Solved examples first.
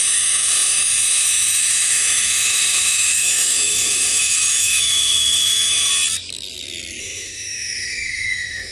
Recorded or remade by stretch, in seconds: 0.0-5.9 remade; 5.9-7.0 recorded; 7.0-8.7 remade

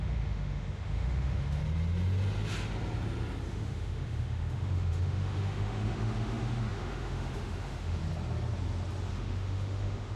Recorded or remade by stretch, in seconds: 0.0-1.6 remade; 1.6-3.5 recorded; 3.5-8.0 remade; 8.0-9.1 recorded; 9.1-10.2 remade

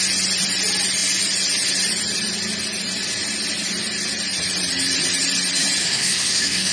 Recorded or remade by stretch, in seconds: 0.0-5.8 recorded; 5.8-6.7 remade

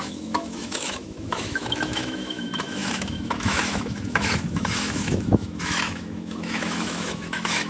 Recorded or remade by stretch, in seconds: 0.0-7.7 remade

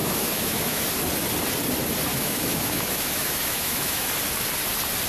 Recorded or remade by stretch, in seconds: 0.0-0.8 remade; 0.8-2.1 recorded; 2.1-4.1 remade; 4.1-5.1 recorded

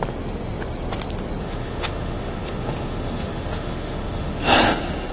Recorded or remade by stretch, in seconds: 0.0-1.4 recorded; 1.4-4.5 remade; 4.5-5.1 recorded